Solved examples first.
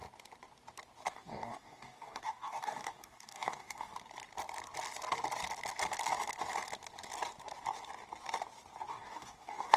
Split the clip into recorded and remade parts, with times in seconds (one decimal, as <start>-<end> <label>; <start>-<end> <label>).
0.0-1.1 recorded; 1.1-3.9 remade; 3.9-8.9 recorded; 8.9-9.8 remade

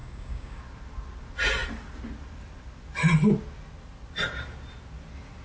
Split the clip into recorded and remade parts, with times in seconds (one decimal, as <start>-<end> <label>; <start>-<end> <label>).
0.0-0.6 remade; 0.6-5.4 recorded

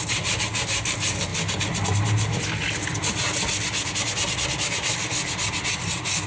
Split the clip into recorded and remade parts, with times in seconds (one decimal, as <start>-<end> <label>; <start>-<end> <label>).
0.0-6.3 recorded

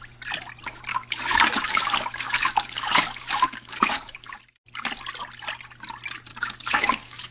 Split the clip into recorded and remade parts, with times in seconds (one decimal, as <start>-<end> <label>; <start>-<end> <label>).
0.0-0.9 recorded; 0.9-4.4 remade; 4.4-6.3 recorded; 6.3-7.3 remade

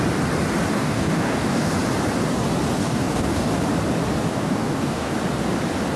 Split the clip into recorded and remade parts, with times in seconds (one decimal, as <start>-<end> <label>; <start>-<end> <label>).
0.0-0.7 recorded; 0.7-1.7 remade; 1.7-2.8 recorded; 2.8-3.5 remade; 3.5-4.3 recorded; 4.3-5.1 remade; 5.1-6.0 recorded

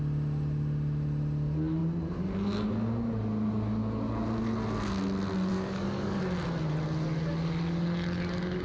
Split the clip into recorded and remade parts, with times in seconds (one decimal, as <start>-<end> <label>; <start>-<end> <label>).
0.0-5.5 recorded; 5.5-6.2 remade; 6.2-8.6 recorded

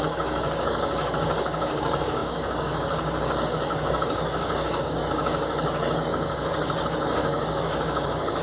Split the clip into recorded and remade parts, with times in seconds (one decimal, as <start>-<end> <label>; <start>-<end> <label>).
0.0-8.4 remade

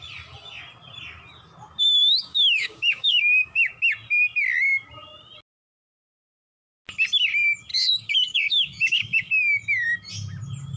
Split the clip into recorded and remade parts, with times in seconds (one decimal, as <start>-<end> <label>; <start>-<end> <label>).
0.0-2.0 recorded; 2.0-3.7 remade; 3.7-7.7 recorded; 7.7-9.3 remade; 9.3-10.8 recorded